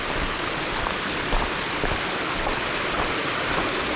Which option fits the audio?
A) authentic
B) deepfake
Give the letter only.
A